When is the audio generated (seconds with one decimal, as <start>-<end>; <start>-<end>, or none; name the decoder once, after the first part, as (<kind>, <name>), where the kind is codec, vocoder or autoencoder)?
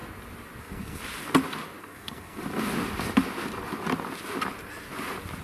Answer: 0.6-1.0 (codec, SNAC); 1.8-2.4